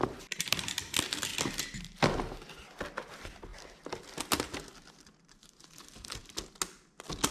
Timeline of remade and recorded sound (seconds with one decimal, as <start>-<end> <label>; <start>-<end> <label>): 0.0-7.3 recorded